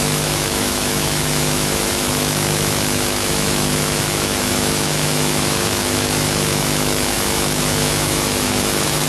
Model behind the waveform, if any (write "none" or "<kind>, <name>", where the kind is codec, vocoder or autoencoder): autoencoder, DAC-VAE